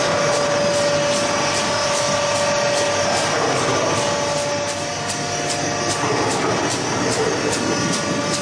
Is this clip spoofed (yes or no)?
no